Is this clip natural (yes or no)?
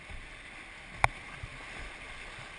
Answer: yes